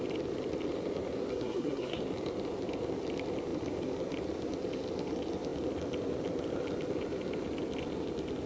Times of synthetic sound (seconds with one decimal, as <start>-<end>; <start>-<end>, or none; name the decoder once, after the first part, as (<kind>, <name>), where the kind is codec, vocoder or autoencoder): 1.3-2.0 (codec, SNAC)

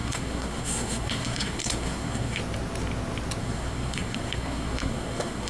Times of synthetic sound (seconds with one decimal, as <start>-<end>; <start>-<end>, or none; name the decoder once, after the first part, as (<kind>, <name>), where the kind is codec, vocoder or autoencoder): 0.0-2.4 (codec, SNAC); 3.4-5.5

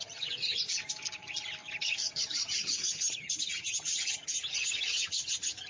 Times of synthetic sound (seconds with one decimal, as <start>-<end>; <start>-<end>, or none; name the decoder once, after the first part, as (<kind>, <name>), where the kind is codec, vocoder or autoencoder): 0.0-0.5 (vocoder, HiFi-GAN); 1.8-5.7

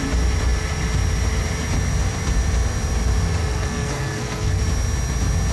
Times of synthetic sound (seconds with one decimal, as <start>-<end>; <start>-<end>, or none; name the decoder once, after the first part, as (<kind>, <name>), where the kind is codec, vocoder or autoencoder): 3.5-4.6 (codec, SNAC)

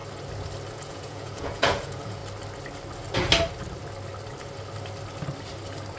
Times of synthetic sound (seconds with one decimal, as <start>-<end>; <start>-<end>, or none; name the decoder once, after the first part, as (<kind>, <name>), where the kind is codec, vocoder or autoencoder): 0.7-2.2 (vocoder, Vocos)